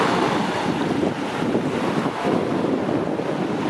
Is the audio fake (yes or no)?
no